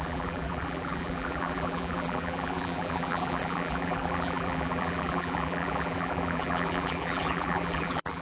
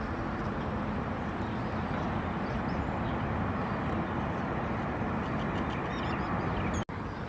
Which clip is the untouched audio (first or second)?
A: second